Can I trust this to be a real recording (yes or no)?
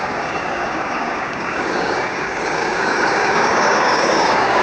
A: no